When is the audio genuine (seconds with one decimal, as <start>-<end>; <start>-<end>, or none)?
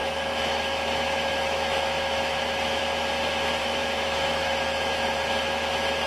2.8-3.6; 5.3-6.1